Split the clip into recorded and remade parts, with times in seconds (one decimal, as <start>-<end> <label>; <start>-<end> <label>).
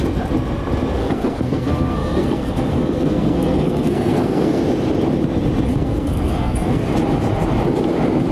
0.0-1.0 recorded; 1.0-4.6 remade; 4.6-5.7 recorded; 5.7-6.8 remade; 6.8-8.3 recorded